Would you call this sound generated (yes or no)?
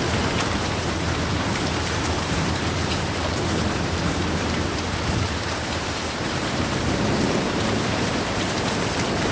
yes